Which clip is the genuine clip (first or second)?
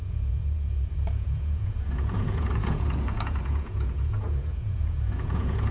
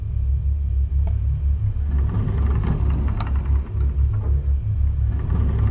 second